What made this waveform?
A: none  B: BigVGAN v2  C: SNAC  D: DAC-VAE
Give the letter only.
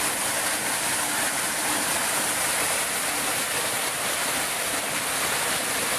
A